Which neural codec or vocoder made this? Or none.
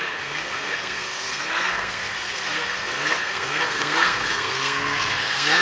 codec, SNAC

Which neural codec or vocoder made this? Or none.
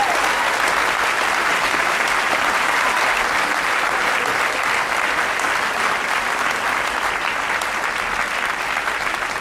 none